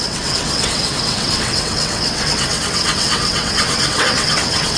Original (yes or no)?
no